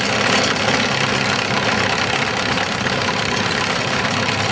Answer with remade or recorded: recorded